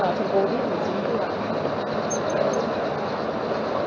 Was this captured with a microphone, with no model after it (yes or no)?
yes